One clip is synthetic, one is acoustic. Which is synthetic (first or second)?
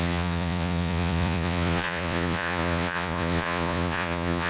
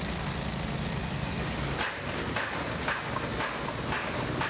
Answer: first